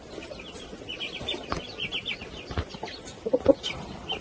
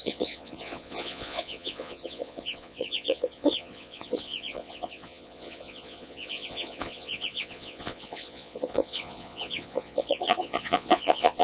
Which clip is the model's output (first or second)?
second